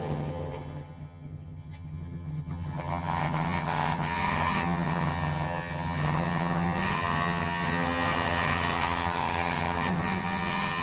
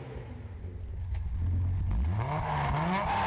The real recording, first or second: second